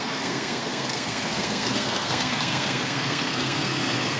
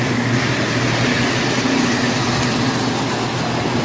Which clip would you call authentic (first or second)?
second